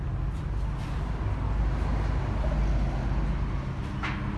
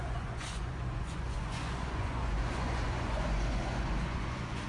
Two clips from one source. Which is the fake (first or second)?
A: second